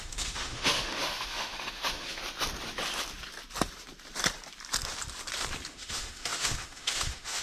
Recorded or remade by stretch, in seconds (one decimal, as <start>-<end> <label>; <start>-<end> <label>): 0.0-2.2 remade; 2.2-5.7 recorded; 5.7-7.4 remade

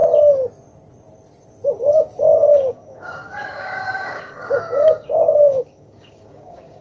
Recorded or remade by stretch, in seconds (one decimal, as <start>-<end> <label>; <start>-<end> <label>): 0.0-1.8 recorded; 1.8-6.8 remade

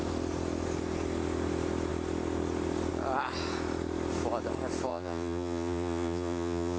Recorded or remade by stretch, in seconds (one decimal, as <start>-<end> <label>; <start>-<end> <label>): 0.0-4.9 recorded; 4.9-6.8 remade

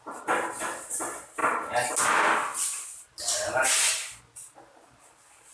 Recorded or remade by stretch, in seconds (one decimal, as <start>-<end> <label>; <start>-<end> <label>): 0.0-2.5 recorded; 2.5-3.1 remade; 3.1-5.5 recorded

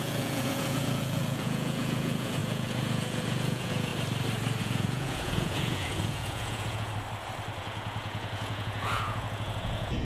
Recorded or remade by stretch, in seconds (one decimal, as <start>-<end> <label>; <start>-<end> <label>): 0.0-3.9 remade; 3.9-4.6 recorded; 4.6-6.9 remade; 6.9-7.6 recorded; 7.6-10.0 remade